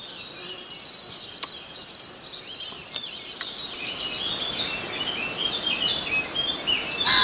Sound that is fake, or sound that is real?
real